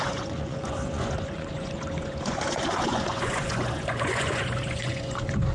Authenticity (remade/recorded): remade